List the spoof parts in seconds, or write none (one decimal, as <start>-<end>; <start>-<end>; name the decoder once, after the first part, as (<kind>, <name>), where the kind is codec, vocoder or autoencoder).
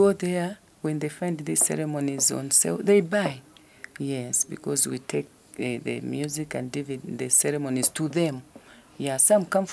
none